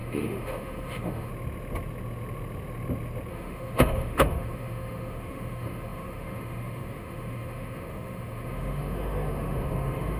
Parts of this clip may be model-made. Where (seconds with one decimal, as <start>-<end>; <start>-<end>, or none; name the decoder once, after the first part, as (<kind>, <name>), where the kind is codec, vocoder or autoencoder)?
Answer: 0.0-1.3 (autoencoder, DAC-VAE); 3.3-10.2